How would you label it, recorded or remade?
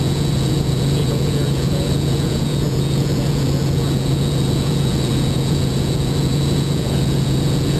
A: remade